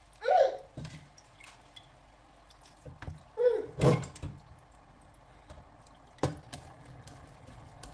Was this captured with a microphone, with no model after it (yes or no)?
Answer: yes